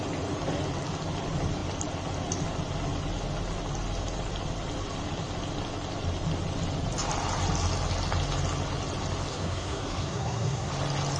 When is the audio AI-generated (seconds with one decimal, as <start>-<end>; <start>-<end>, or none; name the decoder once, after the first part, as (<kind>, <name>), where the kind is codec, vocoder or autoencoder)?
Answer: 9.3-10.7 (codec, SNAC)